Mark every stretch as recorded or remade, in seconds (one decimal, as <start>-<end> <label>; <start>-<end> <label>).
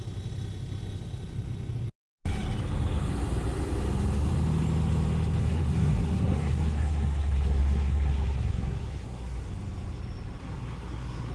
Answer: 0.0-5.4 recorded; 5.4-9.5 remade; 9.5-10.4 recorded; 10.4-11.3 remade